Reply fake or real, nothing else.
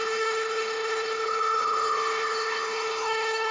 fake